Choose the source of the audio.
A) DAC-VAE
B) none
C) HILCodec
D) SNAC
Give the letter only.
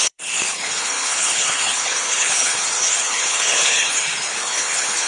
C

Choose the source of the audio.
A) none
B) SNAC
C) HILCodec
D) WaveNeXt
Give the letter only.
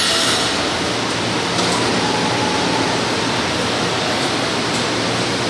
A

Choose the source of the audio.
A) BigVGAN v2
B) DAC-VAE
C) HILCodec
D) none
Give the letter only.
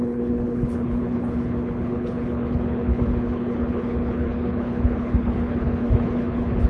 C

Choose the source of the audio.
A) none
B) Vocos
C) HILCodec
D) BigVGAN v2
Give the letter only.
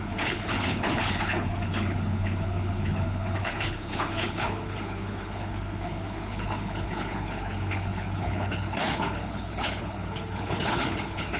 C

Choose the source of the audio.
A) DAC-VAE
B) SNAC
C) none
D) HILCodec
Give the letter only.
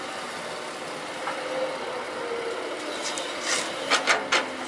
C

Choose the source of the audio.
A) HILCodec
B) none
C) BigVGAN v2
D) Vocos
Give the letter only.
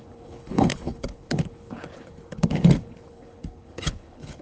A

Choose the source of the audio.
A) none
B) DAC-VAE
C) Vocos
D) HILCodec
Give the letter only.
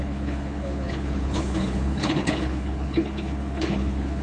D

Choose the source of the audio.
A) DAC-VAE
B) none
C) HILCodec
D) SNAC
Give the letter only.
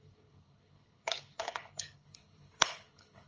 C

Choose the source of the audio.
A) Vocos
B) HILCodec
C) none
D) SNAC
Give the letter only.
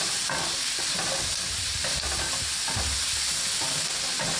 C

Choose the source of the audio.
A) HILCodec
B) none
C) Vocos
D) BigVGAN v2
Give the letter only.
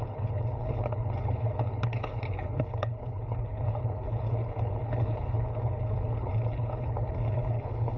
A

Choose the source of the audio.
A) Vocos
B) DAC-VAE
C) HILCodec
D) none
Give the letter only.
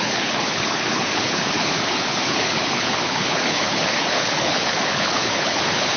C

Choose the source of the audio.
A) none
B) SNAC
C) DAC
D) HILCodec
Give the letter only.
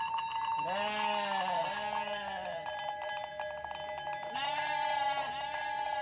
A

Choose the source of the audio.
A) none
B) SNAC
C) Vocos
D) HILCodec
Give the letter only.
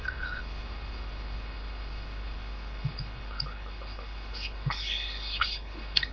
D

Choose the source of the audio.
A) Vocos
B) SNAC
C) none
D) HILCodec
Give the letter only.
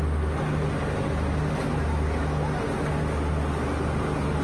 C